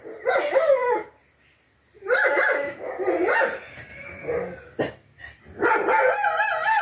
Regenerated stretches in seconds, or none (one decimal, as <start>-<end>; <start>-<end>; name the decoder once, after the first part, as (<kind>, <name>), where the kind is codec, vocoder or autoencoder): 2.3-2.9 (autoencoder, DAC-VAE)